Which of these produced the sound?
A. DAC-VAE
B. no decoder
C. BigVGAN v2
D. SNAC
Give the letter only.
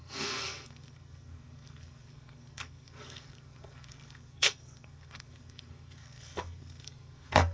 D